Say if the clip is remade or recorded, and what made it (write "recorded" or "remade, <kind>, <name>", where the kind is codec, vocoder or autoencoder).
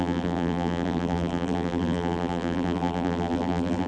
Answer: remade, vocoder, BigVGAN v2